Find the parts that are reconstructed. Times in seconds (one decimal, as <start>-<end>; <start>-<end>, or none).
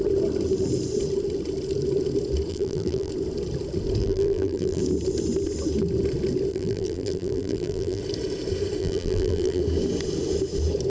2.5-3.1; 4.0-4.8; 6.5-8.0; 8.8-9.6